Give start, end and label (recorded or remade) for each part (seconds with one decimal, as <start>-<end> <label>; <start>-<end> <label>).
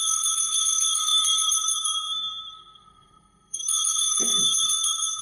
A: 0.0-5.2 remade